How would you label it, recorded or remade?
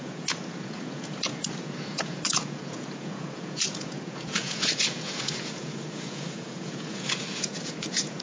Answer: remade